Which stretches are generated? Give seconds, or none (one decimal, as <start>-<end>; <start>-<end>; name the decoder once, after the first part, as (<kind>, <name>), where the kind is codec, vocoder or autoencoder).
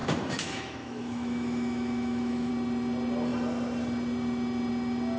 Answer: 0.0-2.5 (autoencoder, DAC-VAE)